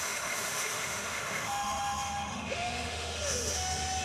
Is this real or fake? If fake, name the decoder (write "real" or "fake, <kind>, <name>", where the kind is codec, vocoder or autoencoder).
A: fake, autoencoder, DAC-VAE